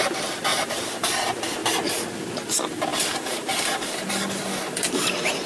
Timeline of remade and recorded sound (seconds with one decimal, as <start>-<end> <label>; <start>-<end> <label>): 0.0-0.5 recorded; 0.5-1.1 remade; 1.1-2.9 recorded; 2.9-4.1 remade; 4.1-5.5 recorded